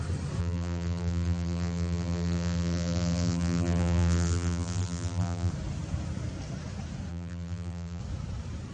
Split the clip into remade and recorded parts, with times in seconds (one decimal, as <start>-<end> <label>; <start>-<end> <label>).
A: 0.0-0.4 recorded; 0.4-5.5 remade; 5.5-7.1 recorded; 7.1-8.0 remade; 8.0-8.7 recorded